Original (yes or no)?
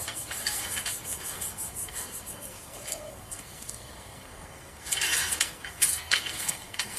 no